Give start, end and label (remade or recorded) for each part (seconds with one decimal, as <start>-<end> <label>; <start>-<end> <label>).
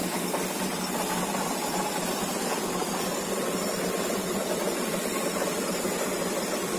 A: 0.0-2.8 recorded; 2.8-5.8 remade; 5.8-6.8 recorded